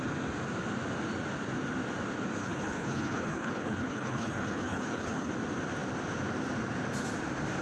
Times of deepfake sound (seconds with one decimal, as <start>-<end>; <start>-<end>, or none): 2.4-5.3